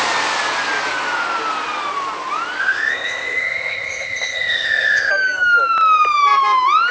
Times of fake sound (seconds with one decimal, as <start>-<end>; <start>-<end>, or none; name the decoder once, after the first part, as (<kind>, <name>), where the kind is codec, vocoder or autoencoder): 2.6-5.1 (codec, ZipCodec)

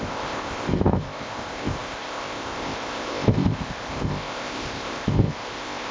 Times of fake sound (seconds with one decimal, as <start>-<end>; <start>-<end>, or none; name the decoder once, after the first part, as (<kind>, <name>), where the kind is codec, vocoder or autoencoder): 0.0-5.9 (codec, ZipCodec)

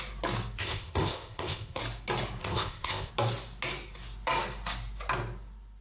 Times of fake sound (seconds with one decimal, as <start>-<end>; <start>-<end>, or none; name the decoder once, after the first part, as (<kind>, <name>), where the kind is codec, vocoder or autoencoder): 0.6-1.8 (codec, ZipCodec); 2.4-3.1